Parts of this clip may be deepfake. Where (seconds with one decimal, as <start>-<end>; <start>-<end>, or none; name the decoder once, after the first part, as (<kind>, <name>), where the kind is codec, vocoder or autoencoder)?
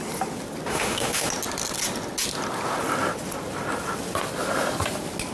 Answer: 0.7-1.3 (autoencoder, DAC-VAE)